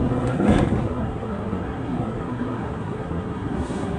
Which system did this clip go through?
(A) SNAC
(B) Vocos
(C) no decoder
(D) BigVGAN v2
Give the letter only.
A